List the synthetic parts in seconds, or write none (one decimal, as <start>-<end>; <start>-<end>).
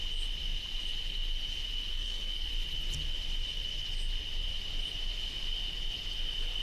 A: 1.9-2.5